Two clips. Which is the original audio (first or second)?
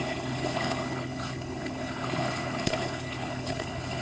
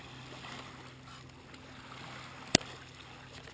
second